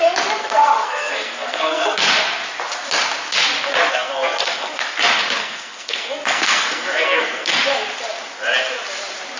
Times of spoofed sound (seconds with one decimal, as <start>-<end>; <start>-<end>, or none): 0.4-2.1; 3.9-4.8; 5.4-7.6